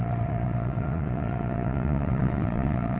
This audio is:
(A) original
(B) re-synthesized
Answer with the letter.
B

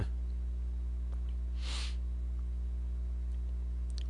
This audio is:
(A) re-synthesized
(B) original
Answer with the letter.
B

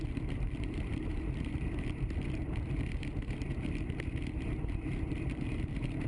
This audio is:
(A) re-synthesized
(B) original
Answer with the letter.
A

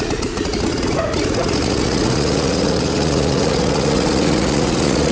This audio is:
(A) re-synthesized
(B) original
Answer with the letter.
A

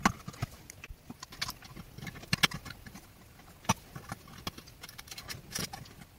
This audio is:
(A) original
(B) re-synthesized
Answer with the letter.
A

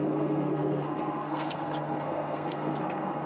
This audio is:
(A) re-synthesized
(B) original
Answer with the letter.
A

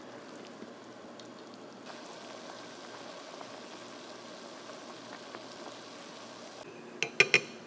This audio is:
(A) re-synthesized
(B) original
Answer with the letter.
B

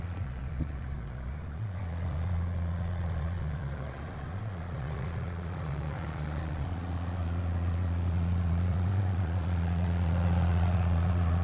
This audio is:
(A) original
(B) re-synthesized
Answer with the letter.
B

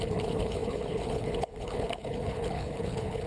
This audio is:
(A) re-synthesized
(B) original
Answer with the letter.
A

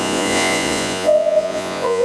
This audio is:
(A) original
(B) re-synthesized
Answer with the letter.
B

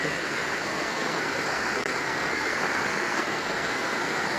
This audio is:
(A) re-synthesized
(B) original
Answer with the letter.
A